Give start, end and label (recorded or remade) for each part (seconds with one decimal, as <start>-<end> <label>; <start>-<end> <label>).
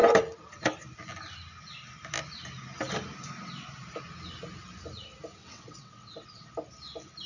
0.0-5.4 recorded; 5.4-6.5 remade; 6.5-7.3 recorded